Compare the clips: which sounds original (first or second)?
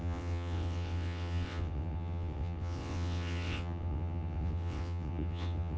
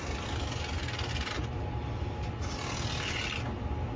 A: second